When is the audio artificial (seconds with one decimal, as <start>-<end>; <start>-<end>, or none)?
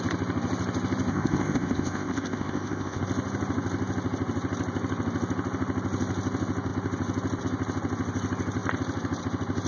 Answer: 1.1-3.0